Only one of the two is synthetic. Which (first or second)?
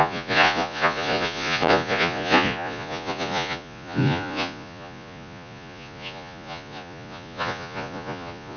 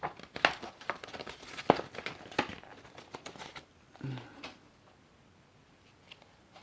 first